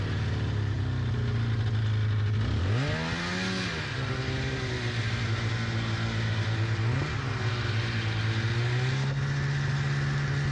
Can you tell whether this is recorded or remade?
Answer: recorded